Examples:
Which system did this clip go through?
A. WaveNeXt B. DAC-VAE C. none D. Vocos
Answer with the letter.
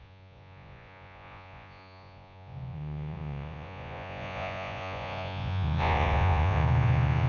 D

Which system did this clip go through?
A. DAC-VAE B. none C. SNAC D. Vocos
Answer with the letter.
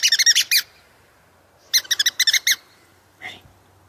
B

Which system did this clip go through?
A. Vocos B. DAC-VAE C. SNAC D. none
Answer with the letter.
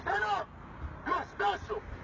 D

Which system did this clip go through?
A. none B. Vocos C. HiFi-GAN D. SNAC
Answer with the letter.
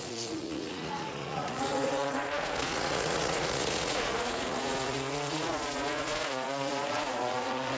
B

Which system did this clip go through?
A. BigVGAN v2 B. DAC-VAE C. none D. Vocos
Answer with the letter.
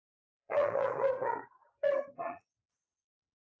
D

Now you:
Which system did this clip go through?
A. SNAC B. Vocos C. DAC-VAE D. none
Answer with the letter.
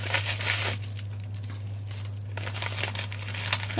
D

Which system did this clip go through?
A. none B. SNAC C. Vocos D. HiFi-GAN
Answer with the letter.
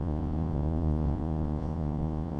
C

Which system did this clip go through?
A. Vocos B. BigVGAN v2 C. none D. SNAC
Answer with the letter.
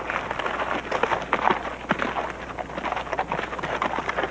C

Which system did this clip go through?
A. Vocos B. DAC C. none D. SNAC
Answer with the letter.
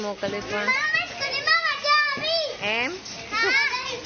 C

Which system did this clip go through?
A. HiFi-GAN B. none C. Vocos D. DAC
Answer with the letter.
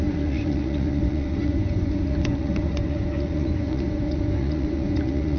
C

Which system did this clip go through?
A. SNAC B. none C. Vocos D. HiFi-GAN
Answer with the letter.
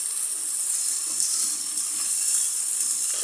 B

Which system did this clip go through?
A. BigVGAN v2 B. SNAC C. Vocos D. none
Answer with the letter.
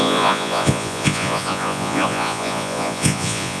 C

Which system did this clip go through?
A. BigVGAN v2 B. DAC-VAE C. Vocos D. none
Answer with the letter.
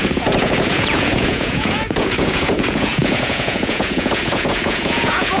C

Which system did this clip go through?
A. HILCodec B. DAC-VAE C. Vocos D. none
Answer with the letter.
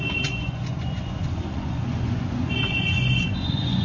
C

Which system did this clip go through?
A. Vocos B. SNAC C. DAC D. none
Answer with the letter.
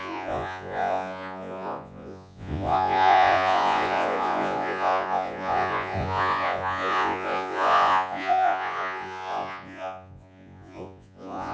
A